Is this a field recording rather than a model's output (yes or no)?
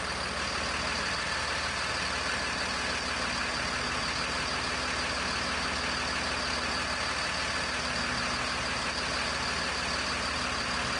yes